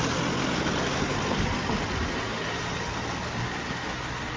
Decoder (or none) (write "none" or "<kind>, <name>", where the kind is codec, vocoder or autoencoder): none